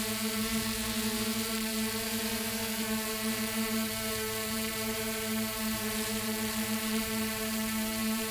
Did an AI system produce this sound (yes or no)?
yes